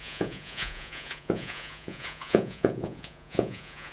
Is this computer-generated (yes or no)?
yes